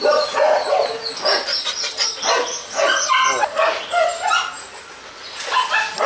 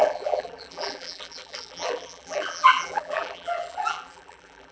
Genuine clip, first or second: first